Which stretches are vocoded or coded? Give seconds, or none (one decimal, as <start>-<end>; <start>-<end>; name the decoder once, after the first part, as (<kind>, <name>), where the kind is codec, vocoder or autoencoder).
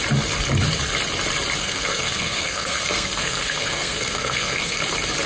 1.6-4.8 (codec, SNAC)